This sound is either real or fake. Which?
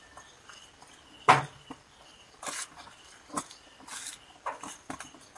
real